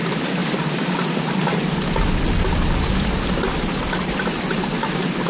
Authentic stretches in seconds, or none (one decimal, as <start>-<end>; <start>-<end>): 0.0-5.3

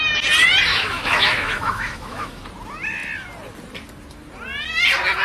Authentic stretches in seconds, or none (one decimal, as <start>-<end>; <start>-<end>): 0.0-0.7; 2.4-5.2

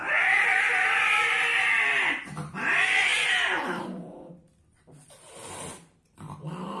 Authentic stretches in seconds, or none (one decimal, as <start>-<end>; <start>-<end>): 1.5-2.2

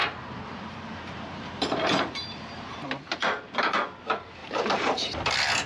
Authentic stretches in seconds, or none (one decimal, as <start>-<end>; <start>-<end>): 3.4-4.4; 5.2-5.7